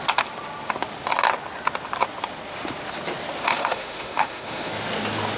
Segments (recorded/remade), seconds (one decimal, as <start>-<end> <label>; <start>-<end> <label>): 0.0-3.5 recorded; 3.5-4.7 remade; 4.7-5.4 recorded